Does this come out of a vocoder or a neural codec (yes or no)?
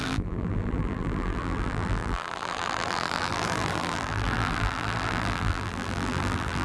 yes